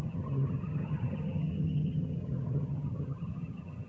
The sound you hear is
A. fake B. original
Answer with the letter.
A